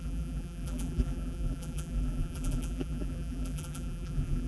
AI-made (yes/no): yes